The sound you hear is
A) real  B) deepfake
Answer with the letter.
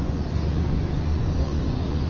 B